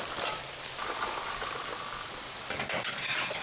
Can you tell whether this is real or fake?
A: fake